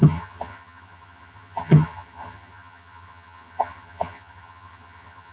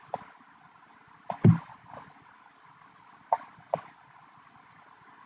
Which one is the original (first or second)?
second